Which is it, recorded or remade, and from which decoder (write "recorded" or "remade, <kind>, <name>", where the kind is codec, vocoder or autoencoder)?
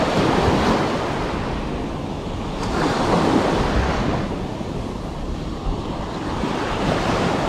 recorded